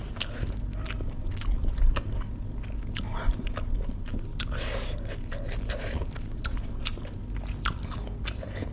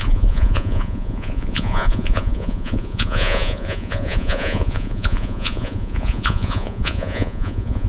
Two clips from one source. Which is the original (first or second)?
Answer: first